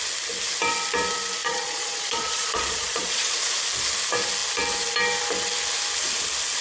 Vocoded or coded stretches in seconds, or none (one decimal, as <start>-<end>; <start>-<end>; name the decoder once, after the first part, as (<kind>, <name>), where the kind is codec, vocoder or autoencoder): 1.4-3.3 (vocoder, Vocos)